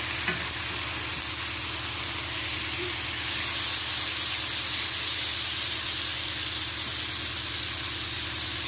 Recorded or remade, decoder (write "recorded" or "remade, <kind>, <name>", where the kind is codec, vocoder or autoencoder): recorded